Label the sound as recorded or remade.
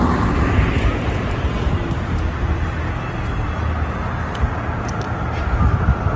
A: recorded